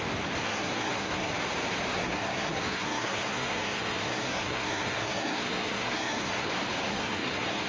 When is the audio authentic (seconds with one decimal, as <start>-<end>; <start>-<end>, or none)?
0.0-0.4; 1.3-1.9; 6.5-6.9